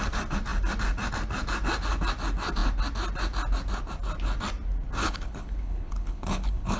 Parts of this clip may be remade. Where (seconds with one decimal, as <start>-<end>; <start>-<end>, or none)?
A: 5.0-6.8